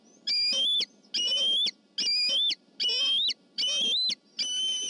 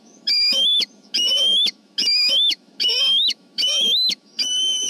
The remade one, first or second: second